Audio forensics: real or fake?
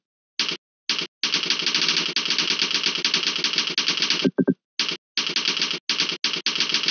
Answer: real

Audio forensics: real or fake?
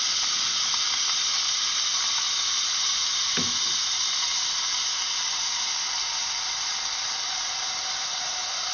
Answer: real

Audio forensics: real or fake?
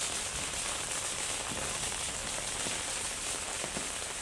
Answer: real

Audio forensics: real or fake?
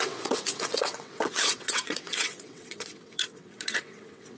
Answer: fake